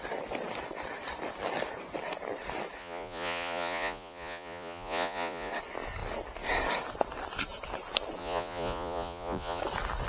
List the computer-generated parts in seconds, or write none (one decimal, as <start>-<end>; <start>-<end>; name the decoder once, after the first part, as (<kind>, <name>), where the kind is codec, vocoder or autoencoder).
2.8-5.5 (vocoder, Vocos); 8.2-9.6